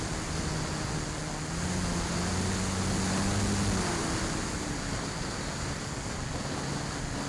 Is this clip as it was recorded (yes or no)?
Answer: yes